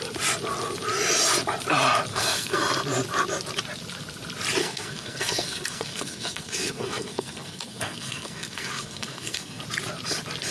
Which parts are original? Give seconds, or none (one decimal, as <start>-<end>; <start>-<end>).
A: 0.0-2.1; 2.6-4.6; 9.6-10.5